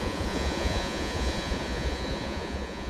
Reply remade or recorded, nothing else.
remade